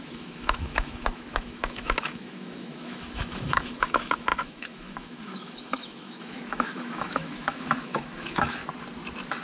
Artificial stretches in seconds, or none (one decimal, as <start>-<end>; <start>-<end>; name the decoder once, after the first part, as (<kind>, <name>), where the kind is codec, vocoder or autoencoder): 0.0-8.6 (autoencoder, DAC-VAE)